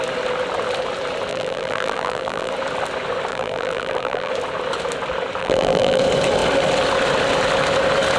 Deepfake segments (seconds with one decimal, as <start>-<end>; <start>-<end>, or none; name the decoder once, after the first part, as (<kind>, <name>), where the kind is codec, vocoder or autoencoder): 1.3-2.5 (vocoder, BigVGAN v2); 3.3-4.3; 5.4-6.0